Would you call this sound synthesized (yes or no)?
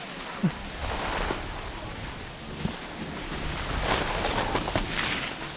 no